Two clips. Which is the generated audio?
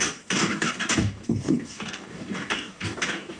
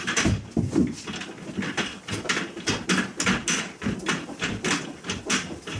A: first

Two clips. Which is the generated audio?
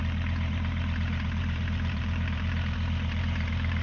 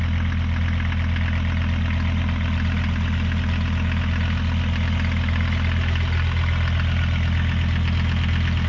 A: first